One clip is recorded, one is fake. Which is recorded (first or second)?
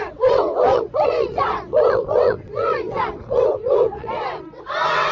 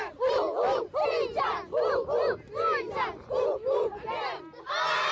second